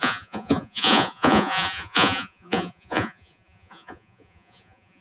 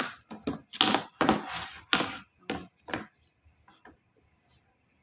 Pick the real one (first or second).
second